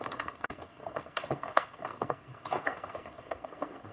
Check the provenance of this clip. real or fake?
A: fake